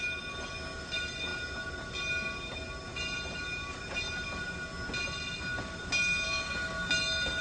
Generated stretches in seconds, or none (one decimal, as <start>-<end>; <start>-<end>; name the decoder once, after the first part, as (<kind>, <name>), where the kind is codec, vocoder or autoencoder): none